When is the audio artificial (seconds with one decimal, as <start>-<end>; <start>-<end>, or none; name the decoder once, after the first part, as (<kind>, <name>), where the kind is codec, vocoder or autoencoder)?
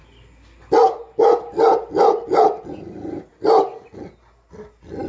none